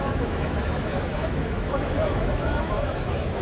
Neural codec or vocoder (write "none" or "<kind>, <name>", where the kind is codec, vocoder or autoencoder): autoencoder, DAC-VAE